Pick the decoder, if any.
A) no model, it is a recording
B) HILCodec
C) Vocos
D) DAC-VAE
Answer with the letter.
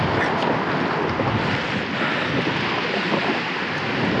A